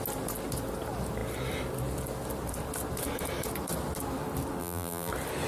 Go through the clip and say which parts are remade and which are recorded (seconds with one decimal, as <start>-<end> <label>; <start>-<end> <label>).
0.0-4.6 recorded; 4.6-5.1 remade; 5.1-5.5 recorded